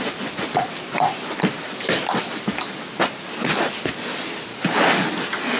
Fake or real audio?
real